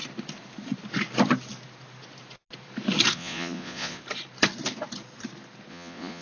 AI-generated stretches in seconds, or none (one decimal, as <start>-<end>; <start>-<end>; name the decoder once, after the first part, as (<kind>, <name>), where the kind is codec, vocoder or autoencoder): 3.1-4.0 (vocoder, Vocos); 5.7-6.2